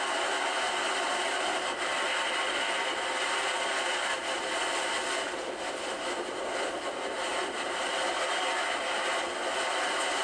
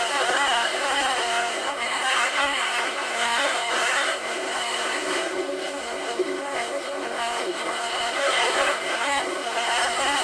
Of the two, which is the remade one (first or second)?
second